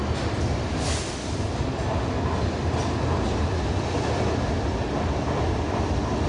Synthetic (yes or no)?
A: no